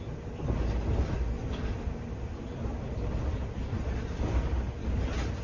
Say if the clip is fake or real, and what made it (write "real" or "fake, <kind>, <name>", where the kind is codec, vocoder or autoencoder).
real